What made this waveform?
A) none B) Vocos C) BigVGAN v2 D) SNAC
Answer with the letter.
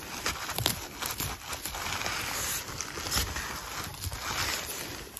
A